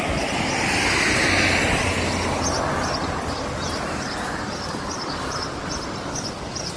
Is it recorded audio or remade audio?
recorded